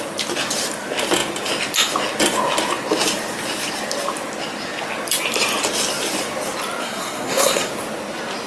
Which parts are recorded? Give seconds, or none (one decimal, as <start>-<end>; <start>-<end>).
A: 0.0-6.8; 7.7-8.5